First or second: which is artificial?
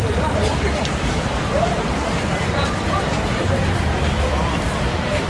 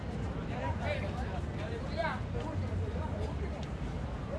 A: first